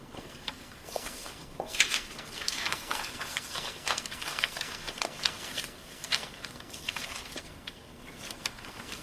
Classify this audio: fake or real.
fake